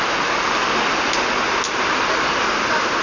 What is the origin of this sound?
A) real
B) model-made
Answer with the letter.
A